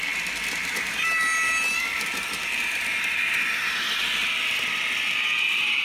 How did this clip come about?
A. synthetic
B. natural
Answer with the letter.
B